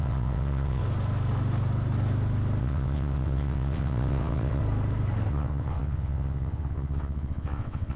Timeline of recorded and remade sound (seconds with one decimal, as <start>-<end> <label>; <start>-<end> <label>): 0.0-0.8 remade; 0.8-2.6 recorded; 2.6-4.6 remade; 4.6-5.3 recorded; 5.3-8.0 remade